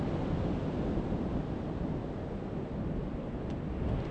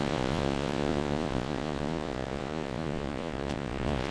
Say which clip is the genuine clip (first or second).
first